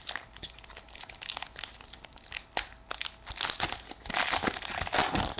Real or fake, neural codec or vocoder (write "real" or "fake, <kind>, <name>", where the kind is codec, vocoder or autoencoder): real